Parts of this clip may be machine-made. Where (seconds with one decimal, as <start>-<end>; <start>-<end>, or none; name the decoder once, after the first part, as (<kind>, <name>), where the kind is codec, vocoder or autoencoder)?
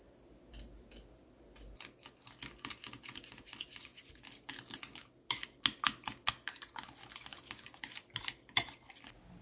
none